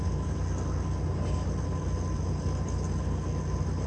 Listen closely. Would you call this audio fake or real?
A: real